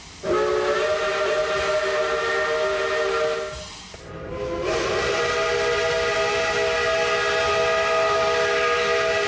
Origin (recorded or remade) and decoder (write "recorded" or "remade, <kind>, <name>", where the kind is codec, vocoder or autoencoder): recorded